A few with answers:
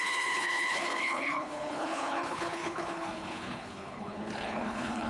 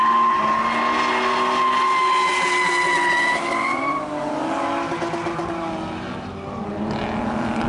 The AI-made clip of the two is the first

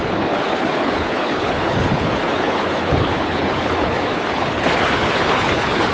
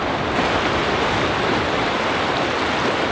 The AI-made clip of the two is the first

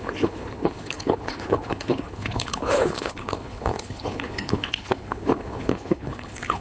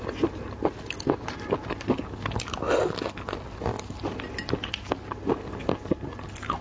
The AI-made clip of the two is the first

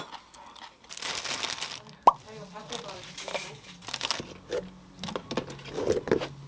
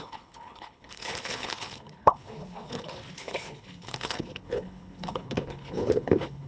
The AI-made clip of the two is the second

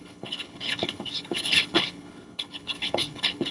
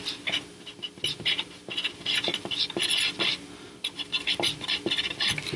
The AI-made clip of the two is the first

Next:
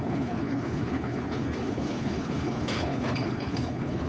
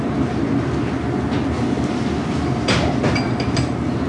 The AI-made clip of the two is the first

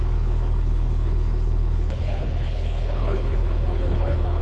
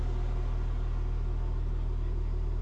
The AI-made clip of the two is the first